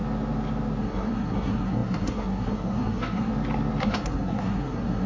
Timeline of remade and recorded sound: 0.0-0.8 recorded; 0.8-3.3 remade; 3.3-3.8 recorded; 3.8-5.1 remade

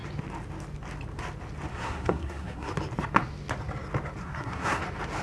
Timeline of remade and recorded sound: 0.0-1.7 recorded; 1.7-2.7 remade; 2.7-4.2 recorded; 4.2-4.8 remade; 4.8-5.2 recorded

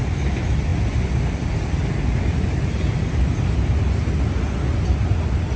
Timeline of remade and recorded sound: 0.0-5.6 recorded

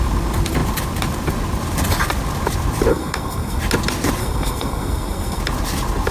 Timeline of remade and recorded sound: 0.0-2.9 recorded; 2.9-3.6 remade; 3.6-4.2 recorded; 4.2-5.4 remade; 5.4-6.1 recorded

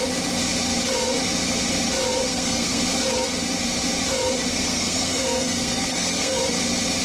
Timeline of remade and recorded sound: 0.0-2.2 recorded; 2.2-2.8 remade; 2.8-4.5 recorded; 4.5-6.4 remade; 6.4-7.0 recorded

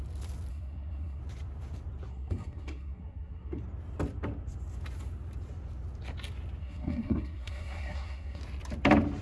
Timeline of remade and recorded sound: 0.0-0.5 recorded; 0.5-1.2 remade; 1.2-2.1 recorded; 2.1-3.6 remade; 3.6-6.6 recorded; 6.6-8.4 remade; 8.4-9.2 recorded

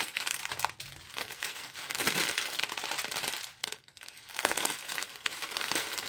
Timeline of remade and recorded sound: 0.0-0.4 remade; 0.4-1.1 recorded; 1.1-2.6 remade; 2.6-3.6 recorded; 3.6-6.1 remade

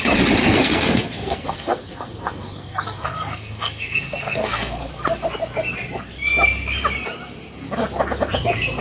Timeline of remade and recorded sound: 0.0-0.4 recorded; 0.4-4.9 remade; 4.9-8.8 recorded